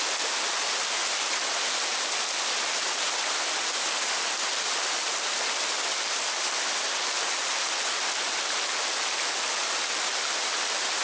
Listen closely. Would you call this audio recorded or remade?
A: recorded